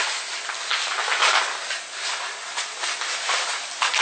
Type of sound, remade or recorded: recorded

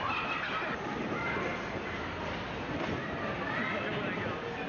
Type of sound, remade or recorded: recorded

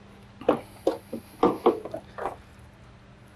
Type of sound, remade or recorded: recorded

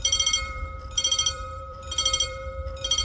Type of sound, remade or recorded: remade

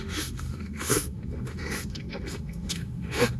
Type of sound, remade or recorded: remade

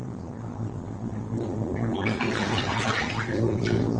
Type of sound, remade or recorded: remade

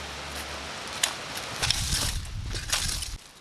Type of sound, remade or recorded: recorded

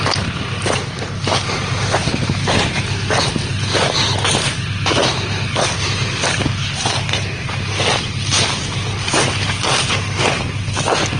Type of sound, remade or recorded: recorded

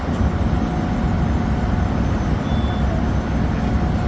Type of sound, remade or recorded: recorded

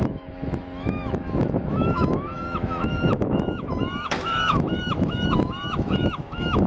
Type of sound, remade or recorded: remade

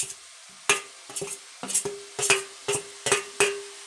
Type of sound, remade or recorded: recorded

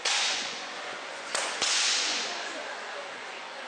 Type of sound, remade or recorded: remade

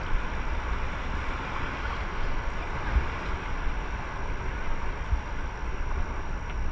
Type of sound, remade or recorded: recorded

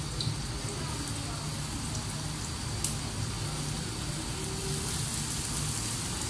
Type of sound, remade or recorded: recorded